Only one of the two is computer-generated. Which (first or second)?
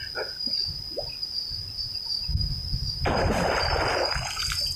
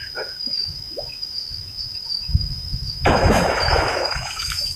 second